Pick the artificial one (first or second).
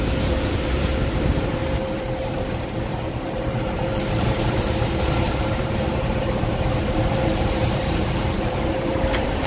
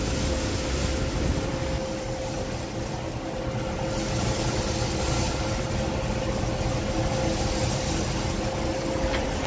first